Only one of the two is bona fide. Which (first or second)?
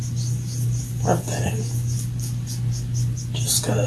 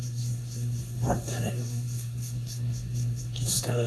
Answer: first